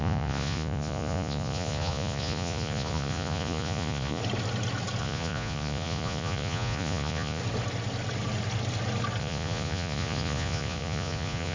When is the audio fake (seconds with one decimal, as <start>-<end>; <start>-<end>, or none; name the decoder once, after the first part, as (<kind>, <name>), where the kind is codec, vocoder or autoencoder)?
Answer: 0.0-4.2 (vocoder, Vocos); 5.0-7.4; 9.2-11.5